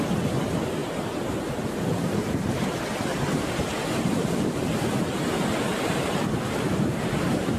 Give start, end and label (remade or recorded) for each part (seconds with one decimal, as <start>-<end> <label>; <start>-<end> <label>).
0.0-0.8 recorded; 0.8-2.6 remade; 2.6-3.1 recorded; 3.1-4.5 remade; 4.5-5.7 recorded; 5.7-7.6 remade